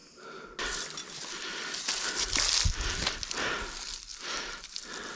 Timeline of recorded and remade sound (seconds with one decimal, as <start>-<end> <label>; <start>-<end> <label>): 0.0-5.2 recorded